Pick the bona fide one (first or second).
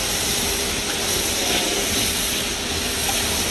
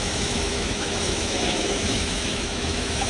first